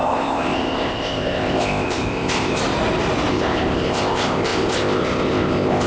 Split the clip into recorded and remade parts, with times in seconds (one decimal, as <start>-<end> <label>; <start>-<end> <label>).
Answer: 0.0-2.6 remade; 2.6-3.3 recorded; 3.3-5.9 remade